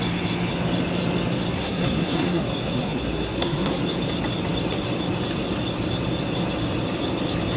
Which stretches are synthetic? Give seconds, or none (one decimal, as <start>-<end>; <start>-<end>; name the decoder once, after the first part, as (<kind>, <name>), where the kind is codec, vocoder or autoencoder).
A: 1.5-3.8 (codec, SNAC)